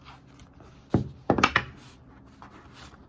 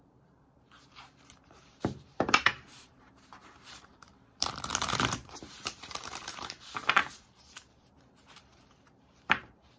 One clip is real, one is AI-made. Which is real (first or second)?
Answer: first